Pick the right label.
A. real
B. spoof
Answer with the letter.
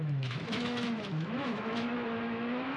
B